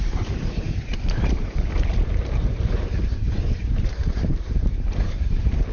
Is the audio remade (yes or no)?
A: yes